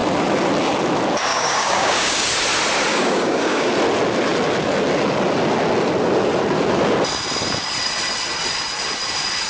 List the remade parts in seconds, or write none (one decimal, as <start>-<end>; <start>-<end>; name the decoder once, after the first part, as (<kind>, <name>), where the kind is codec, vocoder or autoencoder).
1.3-2.3 (codec, DAC); 2.9-3.7